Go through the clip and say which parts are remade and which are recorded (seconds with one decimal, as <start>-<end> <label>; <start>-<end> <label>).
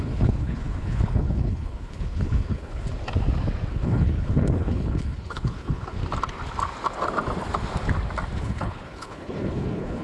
0.0-2.9 remade; 2.9-3.7 recorded; 3.7-6.0 remade; 6.0-8.4 recorded; 8.4-10.0 remade